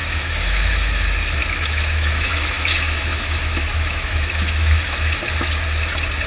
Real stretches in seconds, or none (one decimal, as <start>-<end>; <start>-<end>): 0.9-1.4; 5.2-6.3